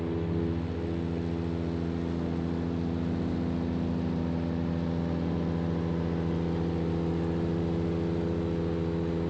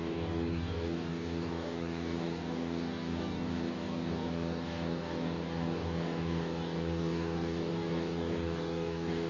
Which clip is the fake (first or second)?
second